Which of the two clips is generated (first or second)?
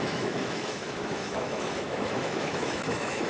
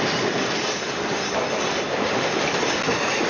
first